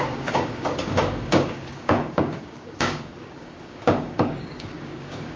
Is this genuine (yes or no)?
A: no